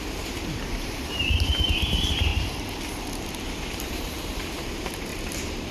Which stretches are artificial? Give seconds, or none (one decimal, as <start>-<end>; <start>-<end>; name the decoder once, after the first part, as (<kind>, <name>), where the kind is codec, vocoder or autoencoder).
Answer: 0.0-2.3 (vocoder, BigVGAN v2); 3.9-5.1

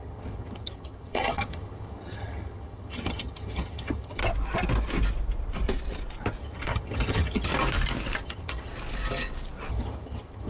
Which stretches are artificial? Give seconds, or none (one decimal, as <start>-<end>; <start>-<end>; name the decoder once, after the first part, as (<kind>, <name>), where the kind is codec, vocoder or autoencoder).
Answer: 0.0-4.2 (vocoder, HiFi-GAN); 6.4-7.5; 8.2-8.7; 9.7-10.5

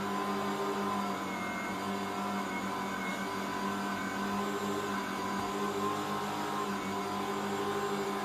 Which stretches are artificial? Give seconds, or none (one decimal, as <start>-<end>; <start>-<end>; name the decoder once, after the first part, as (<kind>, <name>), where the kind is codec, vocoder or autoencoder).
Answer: none

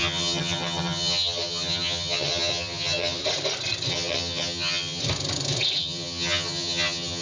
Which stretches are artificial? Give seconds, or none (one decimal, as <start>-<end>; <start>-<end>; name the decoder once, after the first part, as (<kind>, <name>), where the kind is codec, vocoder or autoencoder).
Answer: 0.0-3.2 (vocoder, HiFi-GAN); 3.9-5.0; 5.8-7.2